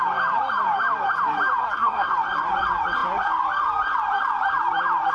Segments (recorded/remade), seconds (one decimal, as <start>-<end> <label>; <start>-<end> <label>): 0.0-1.6 recorded; 1.6-2.1 remade; 2.1-5.1 recorded